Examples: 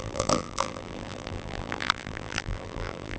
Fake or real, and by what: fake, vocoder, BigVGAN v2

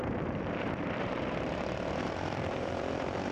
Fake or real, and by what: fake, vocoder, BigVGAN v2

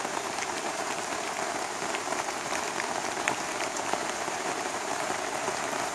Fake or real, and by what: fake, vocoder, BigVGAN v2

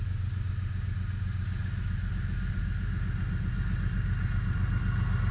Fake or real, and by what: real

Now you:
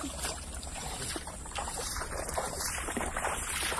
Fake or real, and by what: fake, vocoder, BigVGAN v2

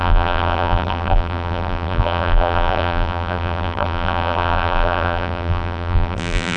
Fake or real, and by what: fake, vocoder, BigVGAN v2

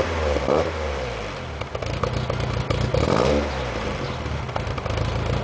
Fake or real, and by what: real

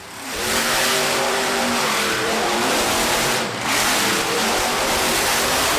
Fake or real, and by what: fake, vocoder, BigVGAN v2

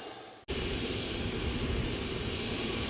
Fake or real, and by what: real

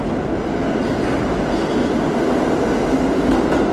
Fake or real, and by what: real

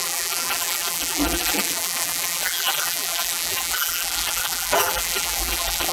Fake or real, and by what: fake, vocoder, BigVGAN v2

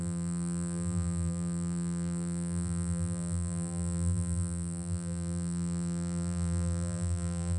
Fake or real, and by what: fake, vocoder, BigVGAN v2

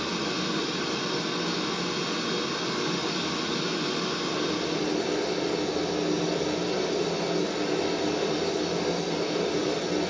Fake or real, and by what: real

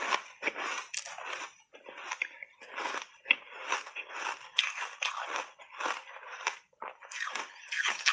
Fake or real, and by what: real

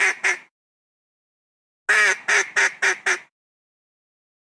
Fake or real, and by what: real